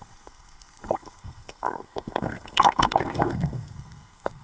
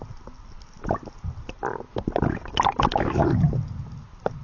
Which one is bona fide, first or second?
second